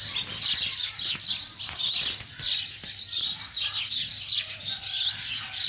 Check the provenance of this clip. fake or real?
real